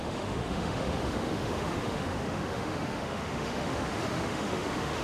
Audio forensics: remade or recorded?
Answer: remade